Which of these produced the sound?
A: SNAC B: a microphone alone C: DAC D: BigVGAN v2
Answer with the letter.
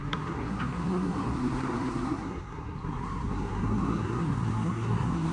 A